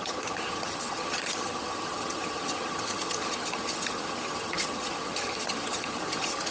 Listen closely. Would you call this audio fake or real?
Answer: fake